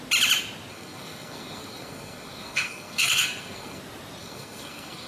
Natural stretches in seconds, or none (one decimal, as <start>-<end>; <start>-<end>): 0.0-0.7; 3.8-4.2